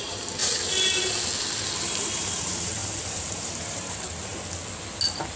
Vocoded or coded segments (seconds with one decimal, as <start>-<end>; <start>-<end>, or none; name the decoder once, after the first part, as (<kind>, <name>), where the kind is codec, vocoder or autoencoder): 0.0-0.4 (vocoder, BigVGAN v2); 1.8-4.3